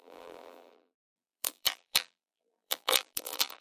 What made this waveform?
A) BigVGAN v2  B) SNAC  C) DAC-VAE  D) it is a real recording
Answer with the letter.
A